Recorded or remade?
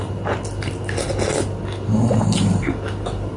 recorded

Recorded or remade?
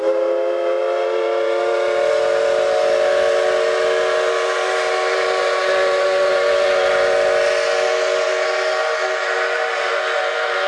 recorded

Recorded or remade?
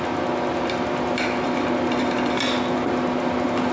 recorded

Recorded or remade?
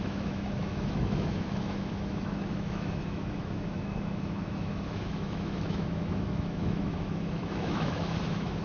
remade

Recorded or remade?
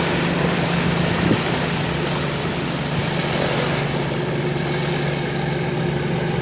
recorded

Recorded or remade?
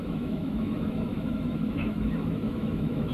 remade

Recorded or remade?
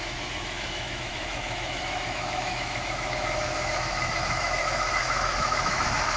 remade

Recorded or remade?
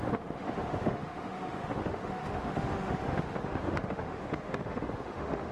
remade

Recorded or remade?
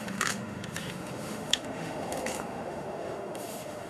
remade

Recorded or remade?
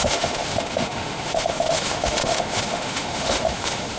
remade